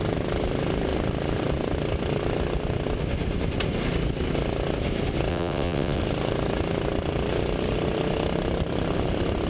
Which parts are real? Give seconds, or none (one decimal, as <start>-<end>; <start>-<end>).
0.0-5.3; 6.0-9.5